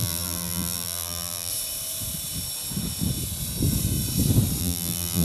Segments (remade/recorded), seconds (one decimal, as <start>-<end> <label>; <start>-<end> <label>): 0.0-1.5 remade; 1.5-4.6 recorded; 4.6-5.2 remade